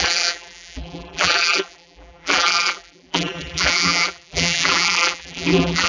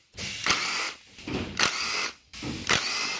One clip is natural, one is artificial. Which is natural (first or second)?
second